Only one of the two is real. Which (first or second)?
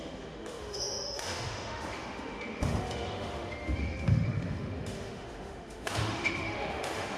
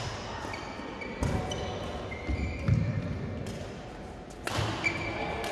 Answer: second